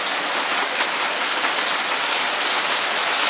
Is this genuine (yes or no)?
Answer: yes